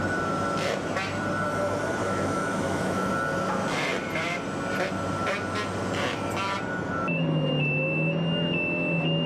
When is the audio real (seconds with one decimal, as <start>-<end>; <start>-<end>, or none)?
0.0-2.0; 3.1-9.3